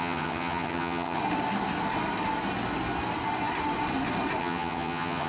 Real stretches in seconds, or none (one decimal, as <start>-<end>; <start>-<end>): 1.2-4.4